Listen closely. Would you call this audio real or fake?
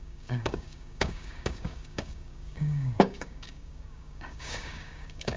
fake